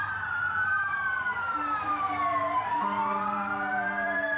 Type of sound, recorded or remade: remade